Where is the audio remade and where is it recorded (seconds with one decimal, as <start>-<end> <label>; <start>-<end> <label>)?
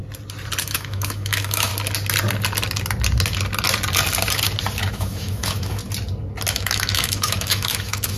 0.0-0.6 recorded; 0.6-1.7 remade; 1.7-4.9 recorded; 4.9-5.8 remade; 5.8-6.5 recorded; 6.5-8.2 remade